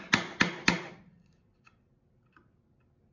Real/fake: real